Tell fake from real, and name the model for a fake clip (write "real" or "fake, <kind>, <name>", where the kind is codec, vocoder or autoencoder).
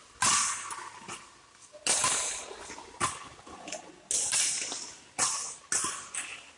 real